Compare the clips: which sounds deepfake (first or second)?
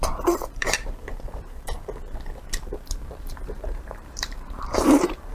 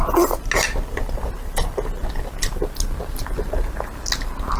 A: first